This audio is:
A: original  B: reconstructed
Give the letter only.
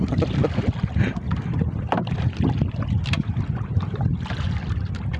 A